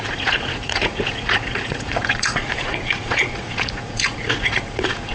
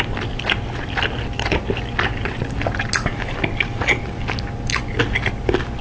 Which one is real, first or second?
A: second